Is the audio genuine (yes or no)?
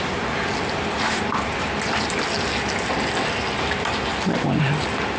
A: yes